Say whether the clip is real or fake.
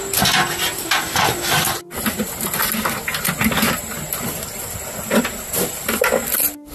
real